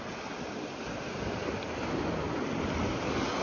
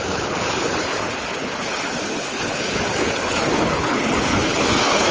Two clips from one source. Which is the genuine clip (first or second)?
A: first